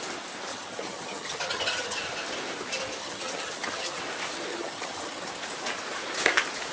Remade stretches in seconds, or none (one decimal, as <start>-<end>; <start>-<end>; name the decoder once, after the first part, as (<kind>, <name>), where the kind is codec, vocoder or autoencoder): 0.5-2.0 (vocoder, HiFi-GAN); 3.0-4.0; 4.5-5.3